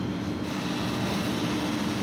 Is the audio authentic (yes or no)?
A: yes